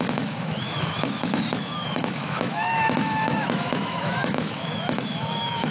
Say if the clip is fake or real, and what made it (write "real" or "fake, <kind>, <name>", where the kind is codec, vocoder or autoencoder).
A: fake, autoencoder, DAC-VAE